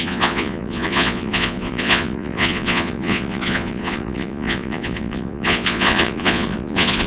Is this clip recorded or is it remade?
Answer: remade